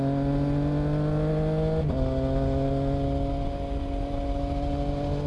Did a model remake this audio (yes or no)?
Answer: no